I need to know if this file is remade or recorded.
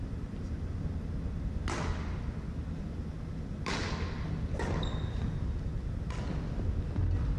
recorded